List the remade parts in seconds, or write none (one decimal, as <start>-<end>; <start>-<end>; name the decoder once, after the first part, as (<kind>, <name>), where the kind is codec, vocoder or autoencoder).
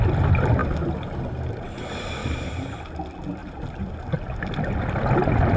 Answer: 2.2-2.8 (vocoder, BigVGAN v2); 3.4-3.9